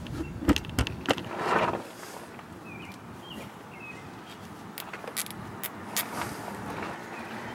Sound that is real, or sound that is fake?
real